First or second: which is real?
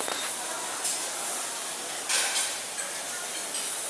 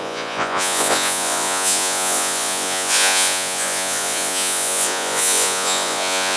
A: first